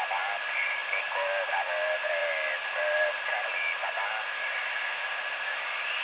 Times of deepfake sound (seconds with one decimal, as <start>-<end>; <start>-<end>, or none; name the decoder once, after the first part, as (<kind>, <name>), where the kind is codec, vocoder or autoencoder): none